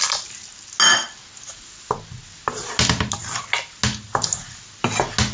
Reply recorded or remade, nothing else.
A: recorded